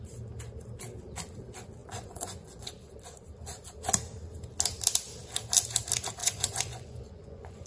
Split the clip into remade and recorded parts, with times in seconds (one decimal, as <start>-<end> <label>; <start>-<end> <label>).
0.0-1.8 recorded; 1.8-2.7 remade; 2.7-6.2 recorded; 6.2-7.7 remade